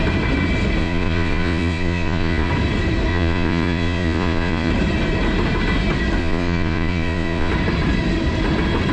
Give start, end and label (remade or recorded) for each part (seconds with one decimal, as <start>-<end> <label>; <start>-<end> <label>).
0.0-0.8 recorded; 0.8-2.5 remade; 2.5-3.1 recorded; 3.1-4.7 remade; 4.7-6.2 recorded; 6.2-7.5 remade; 7.5-8.9 recorded